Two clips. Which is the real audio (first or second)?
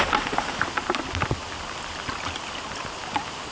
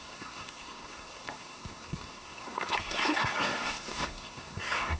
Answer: first